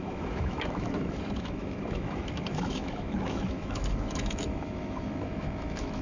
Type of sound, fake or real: fake